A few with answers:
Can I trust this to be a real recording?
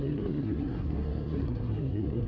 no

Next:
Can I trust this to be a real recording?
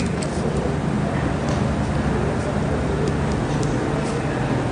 yes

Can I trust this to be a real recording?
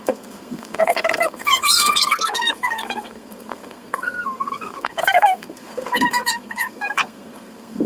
no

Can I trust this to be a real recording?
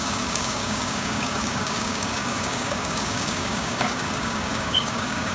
no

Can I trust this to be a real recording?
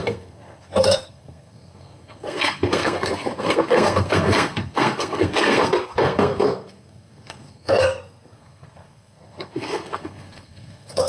no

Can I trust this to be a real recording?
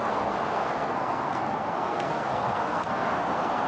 no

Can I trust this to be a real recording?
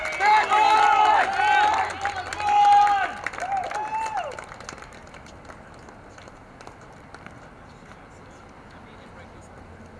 yes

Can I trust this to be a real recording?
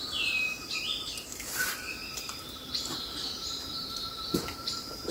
no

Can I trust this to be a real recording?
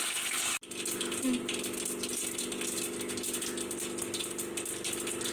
yes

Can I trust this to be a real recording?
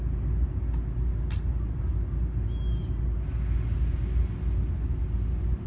yes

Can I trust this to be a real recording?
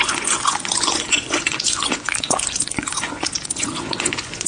no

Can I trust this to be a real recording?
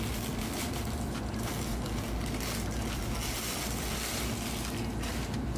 yes